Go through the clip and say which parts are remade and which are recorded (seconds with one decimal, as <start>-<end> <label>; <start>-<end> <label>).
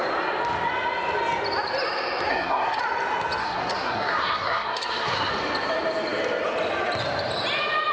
0.0-2.3 recorded; 2.3-2.8 remade; 2.8-3.4 recorded; 3.4-5.3 remade; 5.3-7.9 recorded